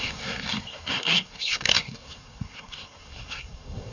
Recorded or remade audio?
remade